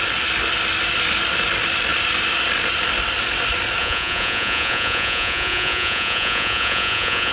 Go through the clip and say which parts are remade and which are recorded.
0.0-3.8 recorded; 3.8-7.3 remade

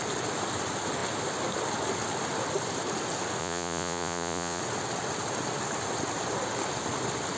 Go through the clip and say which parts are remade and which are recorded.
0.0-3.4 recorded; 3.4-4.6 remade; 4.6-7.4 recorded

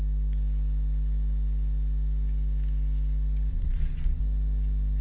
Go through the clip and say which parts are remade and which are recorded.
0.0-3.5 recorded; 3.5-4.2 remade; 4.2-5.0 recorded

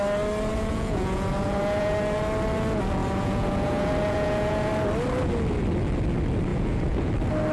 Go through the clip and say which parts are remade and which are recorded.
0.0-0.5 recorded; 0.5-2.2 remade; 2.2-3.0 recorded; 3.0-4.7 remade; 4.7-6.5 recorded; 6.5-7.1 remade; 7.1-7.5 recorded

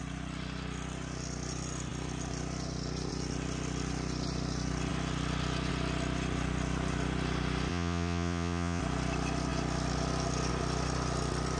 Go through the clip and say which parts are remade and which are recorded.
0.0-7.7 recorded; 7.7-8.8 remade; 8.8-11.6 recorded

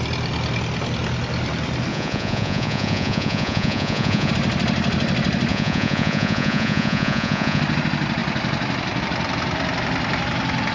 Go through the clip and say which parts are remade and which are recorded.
0.0-1.9 recorded; 1.9-4.3 remade; 4.3-5.5 recorded; 5.5-7.6 remade; 7.6-10.7 recorded

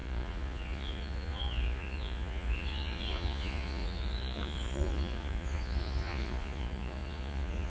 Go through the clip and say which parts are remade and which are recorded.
0.0-7.7 remade

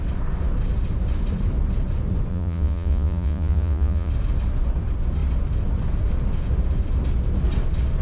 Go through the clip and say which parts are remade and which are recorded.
0.0-2.3 recorded; 2.3-4.1 remade; 4.1-8.0 recorded